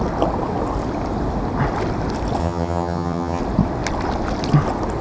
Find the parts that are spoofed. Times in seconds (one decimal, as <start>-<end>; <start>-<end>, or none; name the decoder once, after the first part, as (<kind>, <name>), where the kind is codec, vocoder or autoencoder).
2.4-3.4 (vocoder, HiFi-GAN)